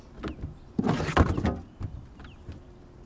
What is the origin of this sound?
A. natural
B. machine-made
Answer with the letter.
A